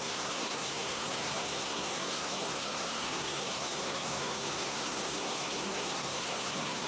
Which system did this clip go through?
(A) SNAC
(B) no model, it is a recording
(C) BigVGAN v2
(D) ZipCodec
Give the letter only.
A